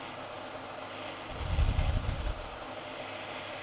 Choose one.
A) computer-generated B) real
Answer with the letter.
B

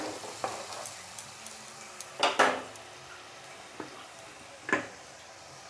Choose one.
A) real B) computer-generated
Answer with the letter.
B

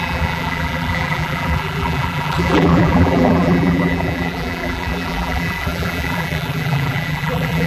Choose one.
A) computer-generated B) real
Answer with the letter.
A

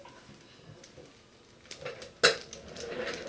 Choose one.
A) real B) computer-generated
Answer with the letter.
A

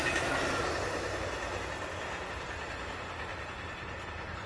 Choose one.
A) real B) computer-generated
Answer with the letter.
A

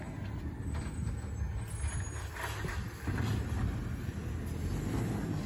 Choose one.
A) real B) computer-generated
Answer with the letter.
A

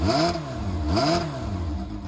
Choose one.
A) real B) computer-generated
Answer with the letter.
A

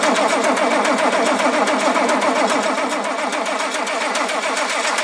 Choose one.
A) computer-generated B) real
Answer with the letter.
B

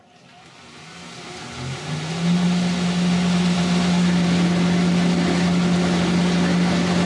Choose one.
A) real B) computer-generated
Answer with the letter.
A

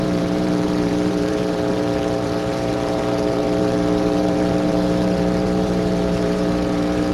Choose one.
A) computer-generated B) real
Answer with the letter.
A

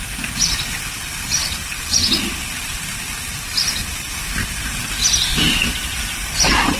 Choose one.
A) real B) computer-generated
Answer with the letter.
B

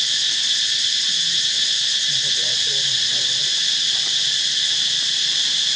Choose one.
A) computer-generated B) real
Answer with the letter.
B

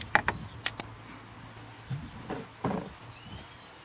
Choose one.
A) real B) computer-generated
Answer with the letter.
A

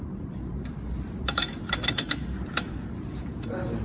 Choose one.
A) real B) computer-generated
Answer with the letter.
B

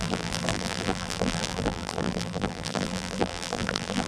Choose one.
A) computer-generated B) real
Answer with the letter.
A